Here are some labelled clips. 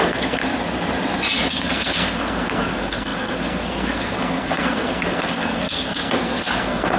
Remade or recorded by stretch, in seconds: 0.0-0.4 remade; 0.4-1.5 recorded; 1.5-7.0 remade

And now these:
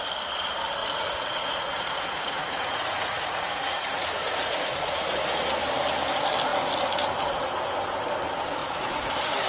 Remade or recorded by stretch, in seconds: 0.0-0.8 recorded; 0.8-5.0 remade; 5.0-8.6 recorded; 8.6-9.1 remade; 9.1-9.5 recorded

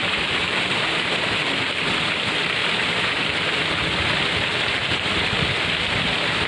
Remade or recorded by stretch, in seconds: 0.0-1.7 remade; 1.7-6.5 recorded

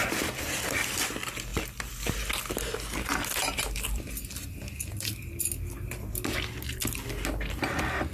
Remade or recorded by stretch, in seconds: 0.0-0.7 remade; 0.7-3.4 recorded; 3.4-4.5 remade; 4.5-8.1 recorded

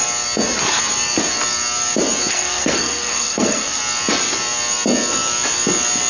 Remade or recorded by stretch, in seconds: 0.0-2.3 recorded; 2.3-3.8 remade; 3.8-6.1 recorded